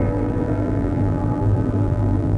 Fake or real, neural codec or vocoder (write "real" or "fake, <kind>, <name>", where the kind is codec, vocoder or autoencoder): fake, vocoder, BigVGAN v2